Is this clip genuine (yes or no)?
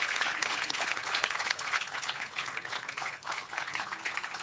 no